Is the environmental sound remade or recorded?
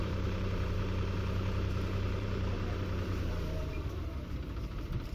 remade